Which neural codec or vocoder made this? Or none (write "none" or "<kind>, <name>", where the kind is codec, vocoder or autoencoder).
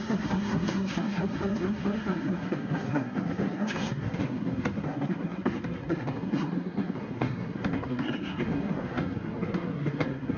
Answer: codec, SNAC